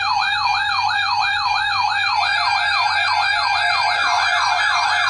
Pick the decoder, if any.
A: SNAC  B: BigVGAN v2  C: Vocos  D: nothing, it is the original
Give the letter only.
C